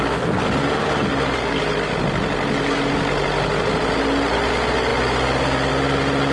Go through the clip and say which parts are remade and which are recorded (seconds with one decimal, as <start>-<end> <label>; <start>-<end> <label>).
0.0-6.3 recorded